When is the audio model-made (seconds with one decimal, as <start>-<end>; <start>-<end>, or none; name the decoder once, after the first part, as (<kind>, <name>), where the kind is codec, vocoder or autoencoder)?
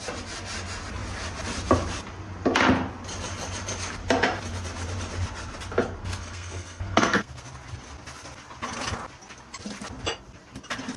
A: 6.0-7.4 (codec, SNAC)